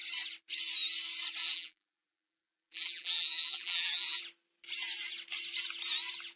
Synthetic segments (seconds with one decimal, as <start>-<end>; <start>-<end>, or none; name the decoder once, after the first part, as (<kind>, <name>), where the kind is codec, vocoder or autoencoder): 1.4-4.2 (vocoder, BigVGAN v2)